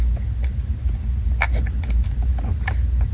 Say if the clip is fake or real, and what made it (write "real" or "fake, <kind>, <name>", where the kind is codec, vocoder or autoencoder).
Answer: real